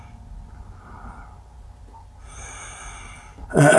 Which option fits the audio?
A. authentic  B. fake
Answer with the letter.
A